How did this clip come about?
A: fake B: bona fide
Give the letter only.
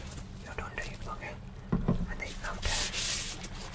B